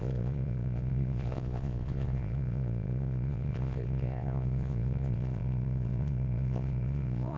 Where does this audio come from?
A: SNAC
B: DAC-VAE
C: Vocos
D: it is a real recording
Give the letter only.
C